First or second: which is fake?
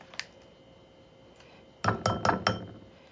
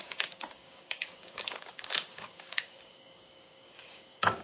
second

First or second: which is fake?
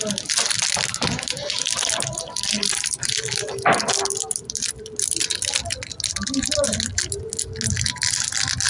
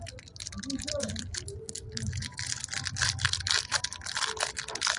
second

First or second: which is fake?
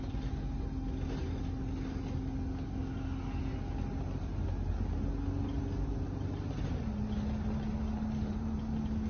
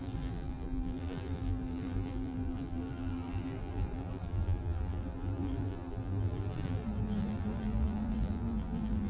second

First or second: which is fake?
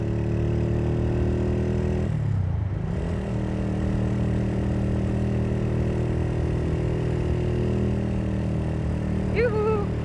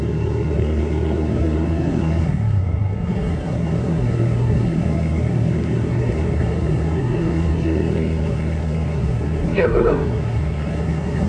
second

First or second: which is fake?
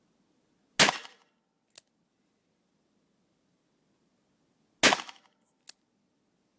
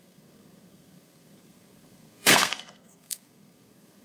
second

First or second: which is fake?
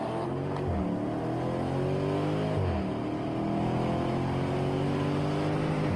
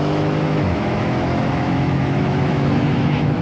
second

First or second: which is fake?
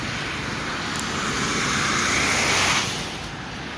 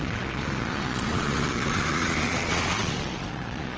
second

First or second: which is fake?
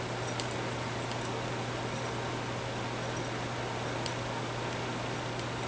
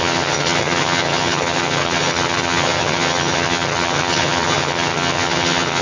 second